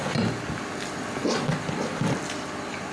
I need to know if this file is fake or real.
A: real